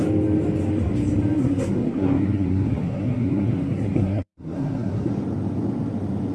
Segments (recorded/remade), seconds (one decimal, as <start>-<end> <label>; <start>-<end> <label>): 0.0-1.4 recorded; 1.4-5.1 remade; 5.1-6.3 recorded